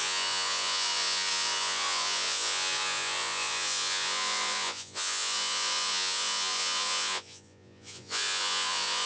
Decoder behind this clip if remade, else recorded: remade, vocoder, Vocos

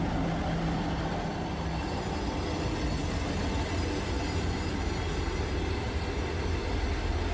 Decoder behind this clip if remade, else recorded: recorded